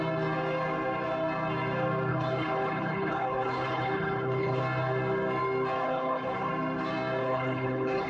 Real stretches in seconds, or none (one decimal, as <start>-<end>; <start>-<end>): 0.0-2.1; 4.6-5.8; 6.5-7.2